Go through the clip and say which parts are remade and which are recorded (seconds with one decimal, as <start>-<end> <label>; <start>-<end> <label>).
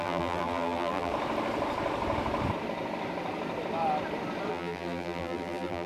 0.0-1.1 remade; 1.1-4.5 recorded; 4.5-5.9 remade